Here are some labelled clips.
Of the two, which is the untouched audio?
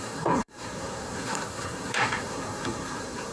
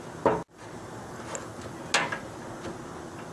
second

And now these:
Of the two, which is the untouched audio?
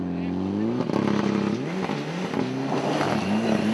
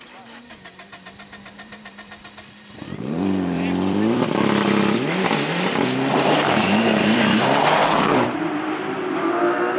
first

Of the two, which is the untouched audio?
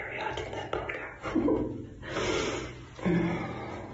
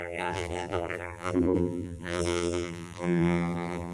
first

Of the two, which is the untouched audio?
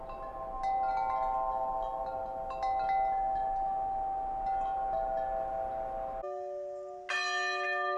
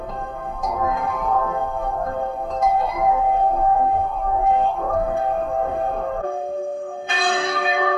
first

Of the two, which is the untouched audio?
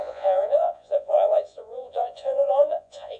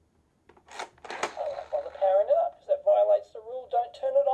second